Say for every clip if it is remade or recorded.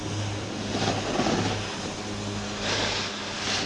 recorded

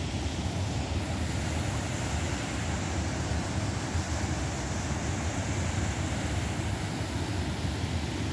recorded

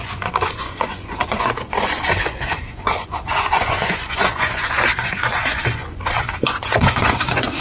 remade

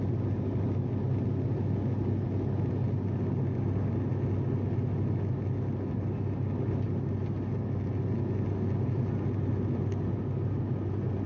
recorded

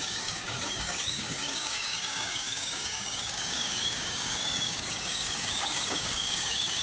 remade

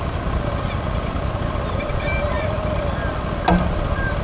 recorded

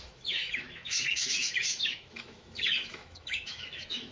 remade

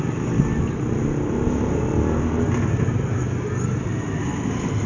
recorded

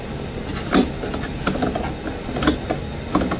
recorded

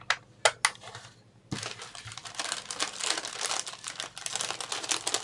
recorded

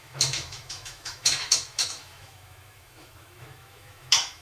remade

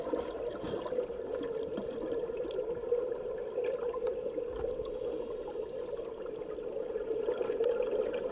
recorded